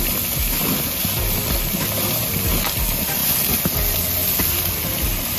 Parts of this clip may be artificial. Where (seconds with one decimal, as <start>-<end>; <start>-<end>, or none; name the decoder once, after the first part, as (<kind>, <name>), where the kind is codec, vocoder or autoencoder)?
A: none